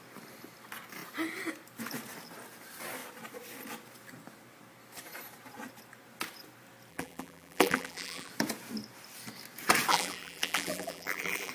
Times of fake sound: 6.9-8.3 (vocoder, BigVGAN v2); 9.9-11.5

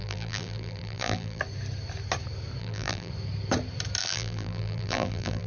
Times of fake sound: 0.0-1.4 (vocoder, BigVGAN v2); 2.6-3.1; 4.0-5.5